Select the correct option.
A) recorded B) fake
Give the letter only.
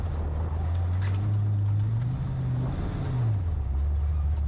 A